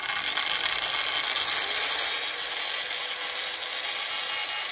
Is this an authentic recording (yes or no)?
yes